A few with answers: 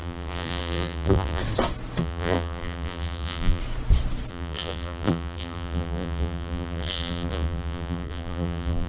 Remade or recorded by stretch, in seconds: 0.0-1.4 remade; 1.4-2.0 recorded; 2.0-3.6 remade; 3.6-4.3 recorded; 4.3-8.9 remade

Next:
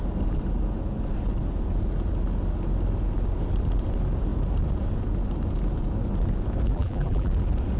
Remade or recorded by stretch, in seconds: 0.0-6.7 recorded; 6.7-7.3 remade; 7.3-7.8 recorded

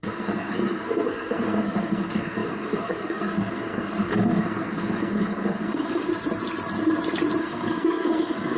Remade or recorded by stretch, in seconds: 0.0-6.1 remade; 6.1-7.4 recorded; 7.4-8.6 remade

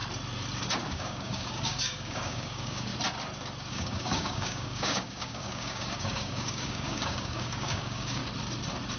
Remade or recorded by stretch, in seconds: 0.0-0.9 recorded; 0.9-2.9 remade; 2.9-3.7 recorded; 3.7-8.2 remade; 8.2-9.0 recorded

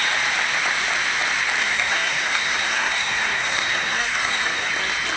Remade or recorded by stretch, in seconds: 0.0-1.6 recorded; 1.6-4.7 remade; 4.7-5.2 recorded

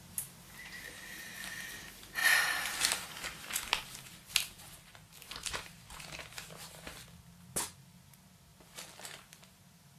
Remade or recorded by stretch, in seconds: 0.0-10.0 recorded

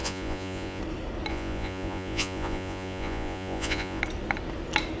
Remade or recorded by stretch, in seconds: 0.0-0.8 remade; 0.8-1.3 recorded; 1.3-4.0 remade; 4.0-5.0 recorded

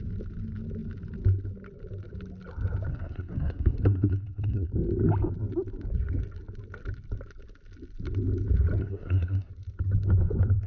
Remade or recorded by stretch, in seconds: 0.0-2.9 recorded; 2.9-4.7 remade; 4.7-8.8 recorded; 8.8-9.5 remade; 9.5-10.7 recorded